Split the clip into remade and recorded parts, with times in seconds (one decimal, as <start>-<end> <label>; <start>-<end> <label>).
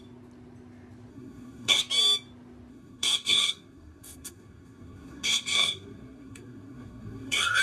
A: 0.0-1.1 recorded; 1.1-1.8 remade; 1.8-2.7 recorded; 2.7-7.6 remade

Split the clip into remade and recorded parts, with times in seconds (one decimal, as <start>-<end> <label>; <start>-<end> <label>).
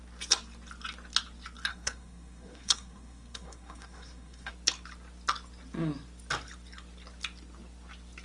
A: 0.0-1.7 recorded; 1.7-4.5 remade; 4.5-8.2 recorded